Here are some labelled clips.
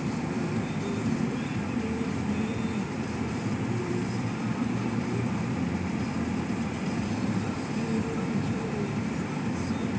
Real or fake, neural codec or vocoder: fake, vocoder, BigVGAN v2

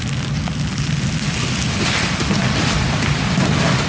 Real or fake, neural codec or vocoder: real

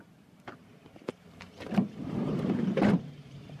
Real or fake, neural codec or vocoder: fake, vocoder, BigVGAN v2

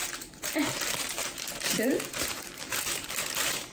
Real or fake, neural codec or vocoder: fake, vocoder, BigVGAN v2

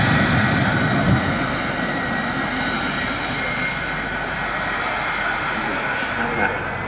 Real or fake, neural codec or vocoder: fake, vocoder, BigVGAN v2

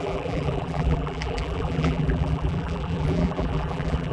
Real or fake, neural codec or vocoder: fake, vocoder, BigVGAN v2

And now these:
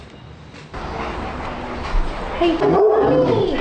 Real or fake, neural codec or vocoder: real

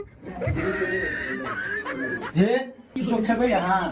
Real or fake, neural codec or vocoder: real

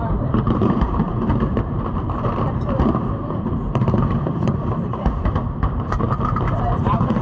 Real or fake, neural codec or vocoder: fake, vocoder, BigVGAN v2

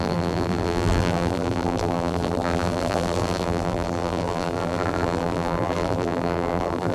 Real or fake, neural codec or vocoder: fake, vocoder, BigVGAN v2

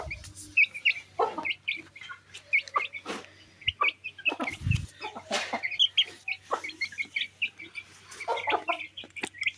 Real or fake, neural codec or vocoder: real